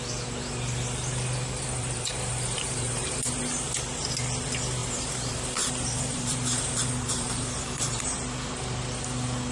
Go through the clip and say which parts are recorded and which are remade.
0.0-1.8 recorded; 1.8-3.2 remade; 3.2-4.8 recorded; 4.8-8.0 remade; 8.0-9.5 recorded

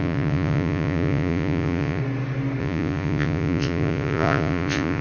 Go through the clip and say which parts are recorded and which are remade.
0.0-2.0 remade; 2.0-2.6 recorded; 2.6-5.0 remade

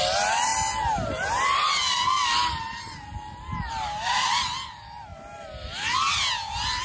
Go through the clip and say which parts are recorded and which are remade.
0.0-6.8 recorded

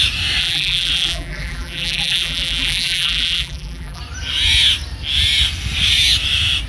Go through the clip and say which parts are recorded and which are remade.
0.0-0.4 recorded; 0.4-4.0 remade; 4.0-6.7 recorded

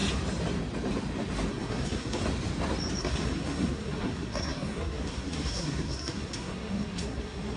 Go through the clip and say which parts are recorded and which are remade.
0.0-1.5 recorded; 1.5-2.2 remade; 2.2-3.0 recorded; 3.0-7.6 remade